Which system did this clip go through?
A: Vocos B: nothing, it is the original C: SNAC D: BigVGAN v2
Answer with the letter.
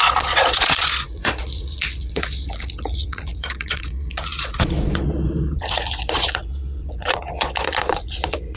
A